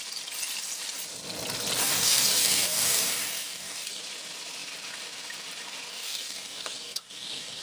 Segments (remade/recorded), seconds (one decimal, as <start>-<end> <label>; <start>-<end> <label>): 0.0-1.8 recorded; 1.8-4.0 remade; 4.0-5.9 recorded; 5.9-7.6 remade